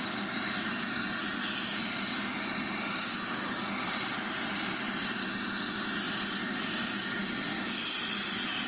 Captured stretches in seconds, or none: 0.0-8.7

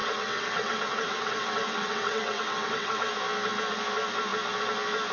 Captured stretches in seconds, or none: 3.1-5.1

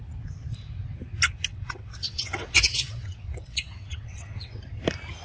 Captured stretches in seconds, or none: 0.0-1.5; 4.6-5.2

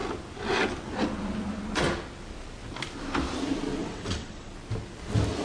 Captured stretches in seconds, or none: 0.0-3.8; 4.5-5.4

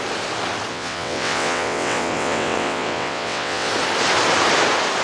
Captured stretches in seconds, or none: 0.0-0.7; 3.7-5.0

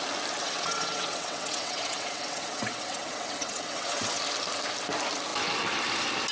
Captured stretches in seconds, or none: 0.0-0.4; 4.2-6.3